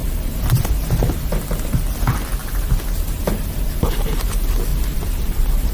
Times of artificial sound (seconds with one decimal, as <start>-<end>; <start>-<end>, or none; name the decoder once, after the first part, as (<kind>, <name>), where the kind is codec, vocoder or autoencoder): 0.0-1.3 (vocoder, BigVGAN v2); 2.4-4.2; 4.7-5.7